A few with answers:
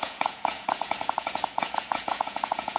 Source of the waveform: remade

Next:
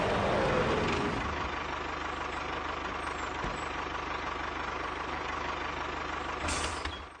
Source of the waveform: recorded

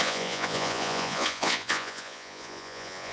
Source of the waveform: remade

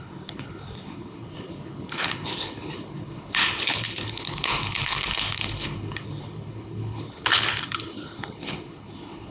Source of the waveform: remade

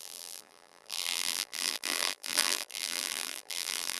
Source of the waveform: remade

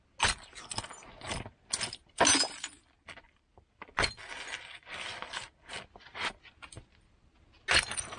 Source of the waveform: recorded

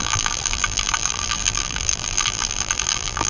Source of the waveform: remade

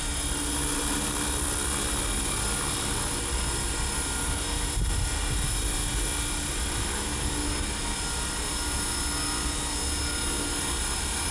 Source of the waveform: recorded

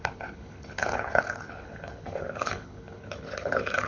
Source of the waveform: remade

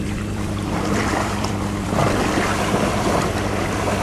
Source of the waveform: remade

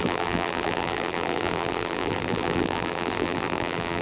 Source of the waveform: remade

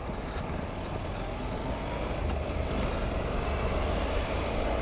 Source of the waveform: recorded